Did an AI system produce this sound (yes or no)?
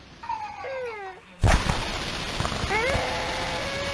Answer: no